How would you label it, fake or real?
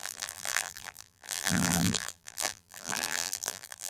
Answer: fake